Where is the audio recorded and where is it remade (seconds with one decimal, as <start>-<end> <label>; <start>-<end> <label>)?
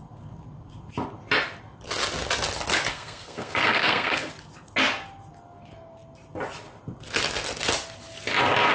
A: 0.0-2.9 recorded; 2.9-4.3 remade; 4.3-8.7 recorded